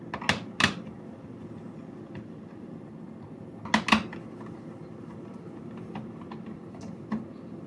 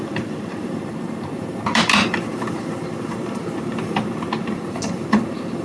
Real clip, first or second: first